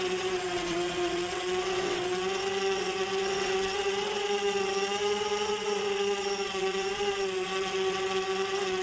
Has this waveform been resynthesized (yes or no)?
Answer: yes